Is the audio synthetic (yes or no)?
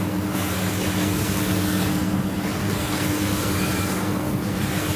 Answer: yes